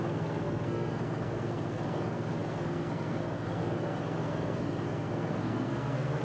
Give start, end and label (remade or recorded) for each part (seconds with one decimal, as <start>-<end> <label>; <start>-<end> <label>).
0.0-6.2 remade